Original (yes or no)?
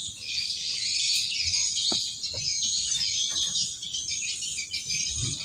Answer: yes